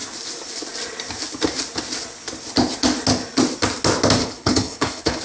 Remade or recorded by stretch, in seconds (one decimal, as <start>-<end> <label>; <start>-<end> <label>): 0.0-4.2 recorded; 4.2-5.2 remade